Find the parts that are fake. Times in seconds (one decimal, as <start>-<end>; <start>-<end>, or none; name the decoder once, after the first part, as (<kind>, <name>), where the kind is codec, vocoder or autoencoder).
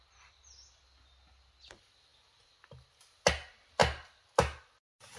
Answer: none